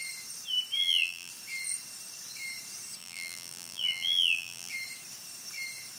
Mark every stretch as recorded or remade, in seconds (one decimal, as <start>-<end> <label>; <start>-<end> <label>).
0.0-0.8 recorded; 0.8-1.3 remade; 1.3-3.0 recorded; 3.0-4.7 remade; 4.7-6.0 recorded